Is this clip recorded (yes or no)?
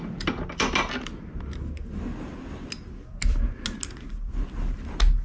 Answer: yes